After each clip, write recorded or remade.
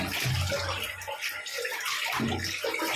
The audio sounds recorded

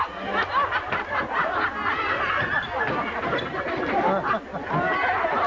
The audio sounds recorded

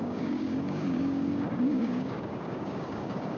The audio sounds remade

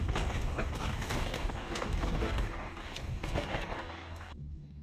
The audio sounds remade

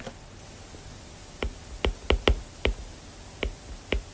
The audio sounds recorded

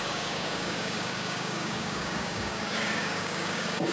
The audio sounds remade